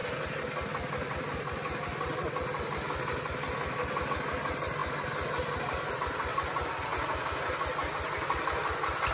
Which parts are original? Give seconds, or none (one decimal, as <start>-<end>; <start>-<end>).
0.0-9.1